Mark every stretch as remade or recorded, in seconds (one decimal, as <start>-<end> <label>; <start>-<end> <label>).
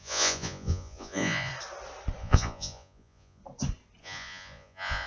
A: 0.0-1.5 remade; 1.5-2.2 recorded; 2.2-3.4 remade; 3.4-4.0 recorded; 4.0-5.1 remade